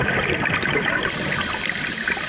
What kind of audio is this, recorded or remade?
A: recorded